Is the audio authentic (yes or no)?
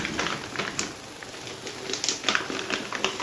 yes